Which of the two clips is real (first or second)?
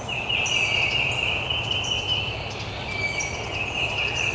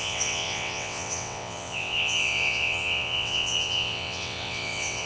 first